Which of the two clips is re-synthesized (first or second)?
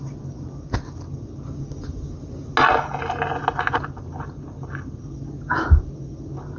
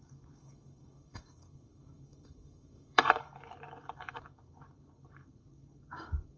second